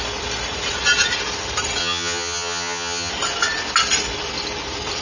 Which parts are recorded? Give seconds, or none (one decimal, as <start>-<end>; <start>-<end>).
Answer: 0.0-1.8; 3.1-5.0